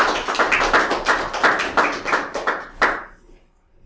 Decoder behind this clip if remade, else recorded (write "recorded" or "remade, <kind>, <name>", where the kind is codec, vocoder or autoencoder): recorded